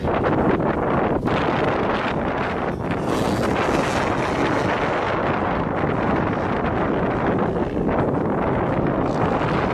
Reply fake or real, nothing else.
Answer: real